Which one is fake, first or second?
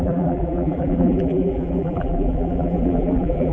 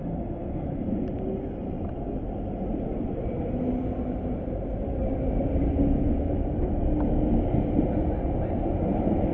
first